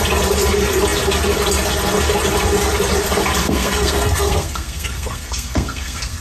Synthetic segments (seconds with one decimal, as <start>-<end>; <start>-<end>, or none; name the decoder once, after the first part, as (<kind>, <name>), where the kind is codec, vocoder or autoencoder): 3.4-6.2 (codec, SNAC)